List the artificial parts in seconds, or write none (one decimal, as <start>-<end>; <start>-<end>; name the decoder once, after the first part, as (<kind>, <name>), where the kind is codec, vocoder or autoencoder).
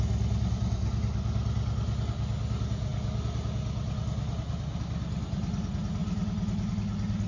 none